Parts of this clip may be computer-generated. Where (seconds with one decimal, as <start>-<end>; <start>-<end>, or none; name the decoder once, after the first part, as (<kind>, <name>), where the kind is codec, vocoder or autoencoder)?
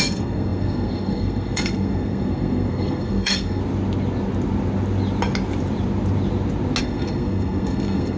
0.0-3.6 (codec, SNAC); 6.8-8.2